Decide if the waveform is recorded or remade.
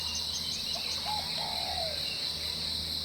recorded